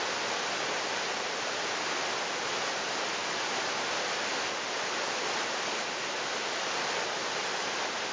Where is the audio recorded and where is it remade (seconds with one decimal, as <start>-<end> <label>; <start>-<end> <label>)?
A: 0.0-8.1 recorded